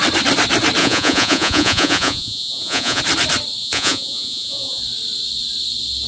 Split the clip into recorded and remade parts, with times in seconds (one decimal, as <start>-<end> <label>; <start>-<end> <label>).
0.0-0.8 recorded; 0.8-3.0 remade; 3.0-3.6 recorded; 3.6-4.8 remade; 4.8-6.1 recorded